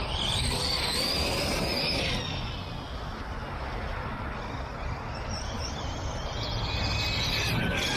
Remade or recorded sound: recorded